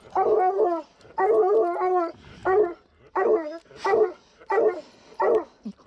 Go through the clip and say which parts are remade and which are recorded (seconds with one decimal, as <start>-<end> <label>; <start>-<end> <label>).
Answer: 0.0-5.9 recorded